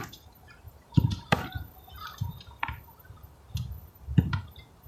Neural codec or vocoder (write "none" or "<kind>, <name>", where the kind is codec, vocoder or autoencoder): vocoder, BigVGAN v2